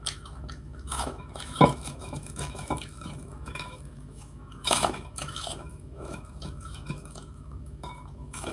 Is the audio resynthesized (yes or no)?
yes